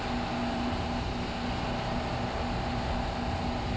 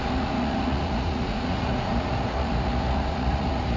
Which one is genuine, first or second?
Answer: first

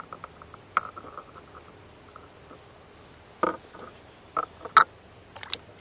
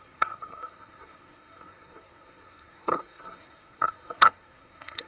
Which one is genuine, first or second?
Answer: first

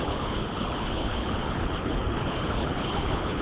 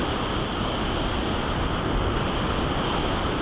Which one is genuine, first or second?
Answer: second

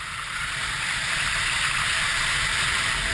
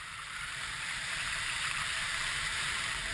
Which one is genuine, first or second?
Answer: first